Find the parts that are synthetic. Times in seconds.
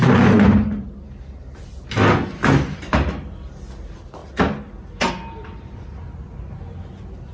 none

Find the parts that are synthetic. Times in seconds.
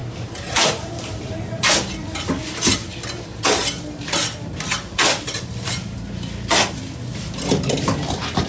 0.0-1.7 (vocoder, BigVGAN v2)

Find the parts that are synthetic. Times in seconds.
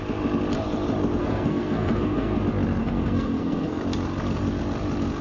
1.2-2.4 (codec, SNAC); 2.8-3.8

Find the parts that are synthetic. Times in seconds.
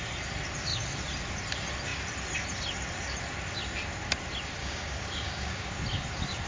4.6-5.8 (codec, DAC)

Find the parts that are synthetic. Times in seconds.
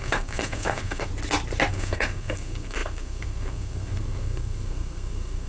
0.0-1.1 (codec, SNAC); 1.7-5.5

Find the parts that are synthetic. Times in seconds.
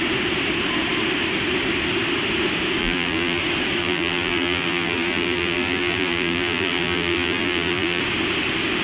2.8-3.4 (vocoder, BigVGAN v2); 3.8-8.0